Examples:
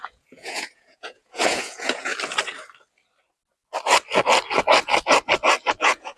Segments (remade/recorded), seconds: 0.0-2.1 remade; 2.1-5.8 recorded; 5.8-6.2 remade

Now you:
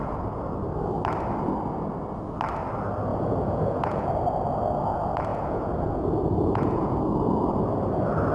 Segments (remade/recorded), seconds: 0.0-3.1 recorded; 3.1-4.1 remade; 4.1-5.3 recorded; 5.3-7.4 remade; 7.4-8.3 recorded

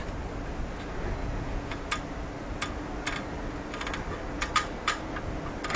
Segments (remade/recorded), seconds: 0.0-1.2 recorded; 1.2-1.8 remade; 1.8-5.8 recorded

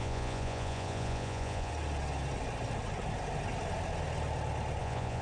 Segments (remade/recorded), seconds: 0.0-1.7 remade; 1.7-4.8 recorded; 4.8-5.2 remade

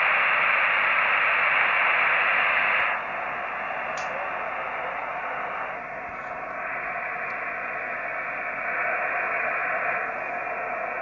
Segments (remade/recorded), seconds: 0.0-11.0 recorded